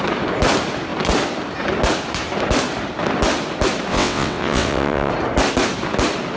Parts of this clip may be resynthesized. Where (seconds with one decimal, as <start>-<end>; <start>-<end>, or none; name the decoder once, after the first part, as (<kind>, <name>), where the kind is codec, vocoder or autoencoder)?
3.9-5.1 (vocoder, WaveNeXt)